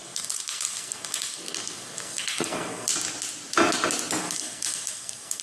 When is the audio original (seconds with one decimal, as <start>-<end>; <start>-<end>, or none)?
2.9-4.2